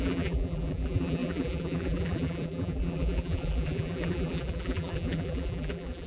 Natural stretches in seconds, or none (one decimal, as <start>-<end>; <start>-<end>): none